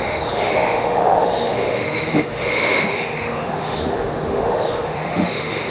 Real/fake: fake